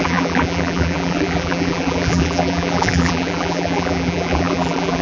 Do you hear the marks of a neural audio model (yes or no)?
yes